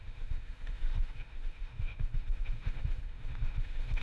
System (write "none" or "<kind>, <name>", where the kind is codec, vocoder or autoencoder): autoencoder, DAC-VAE